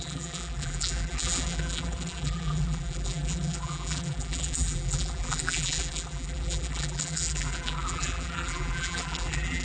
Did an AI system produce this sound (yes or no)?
yes